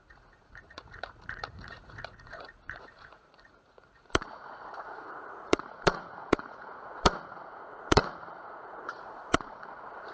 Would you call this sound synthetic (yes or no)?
yes